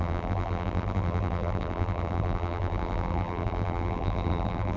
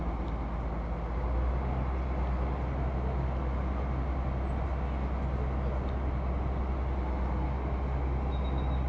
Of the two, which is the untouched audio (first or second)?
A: second